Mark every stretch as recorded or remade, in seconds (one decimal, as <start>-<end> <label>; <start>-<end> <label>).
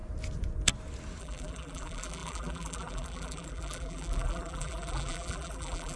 0.0-1.2 recorded; 1.2-6.0 remade